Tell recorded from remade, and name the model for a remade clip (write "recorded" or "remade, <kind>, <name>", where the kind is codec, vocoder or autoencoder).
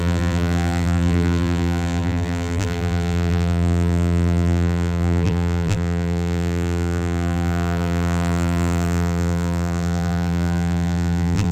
remade, vocoder, BigVGAN v2